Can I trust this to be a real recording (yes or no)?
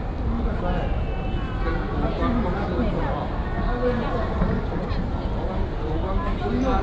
yes